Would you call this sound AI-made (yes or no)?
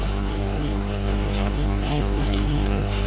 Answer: yes